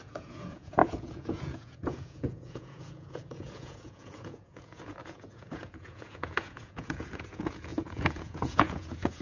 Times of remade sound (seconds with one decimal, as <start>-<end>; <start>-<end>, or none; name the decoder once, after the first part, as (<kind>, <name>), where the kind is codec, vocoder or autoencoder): 0.0-9.2 (vocoder, Vocos)